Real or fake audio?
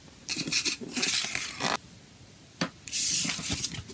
real